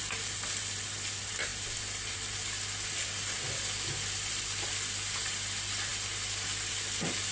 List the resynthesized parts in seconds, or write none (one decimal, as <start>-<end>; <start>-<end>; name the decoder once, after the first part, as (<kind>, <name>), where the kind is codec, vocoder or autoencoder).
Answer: none